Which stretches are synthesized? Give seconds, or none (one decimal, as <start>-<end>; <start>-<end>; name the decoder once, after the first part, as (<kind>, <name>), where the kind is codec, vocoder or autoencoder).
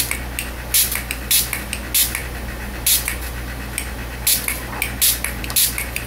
none